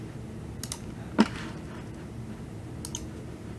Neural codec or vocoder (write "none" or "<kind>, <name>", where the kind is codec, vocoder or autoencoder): none